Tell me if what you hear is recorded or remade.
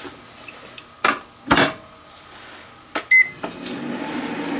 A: recorded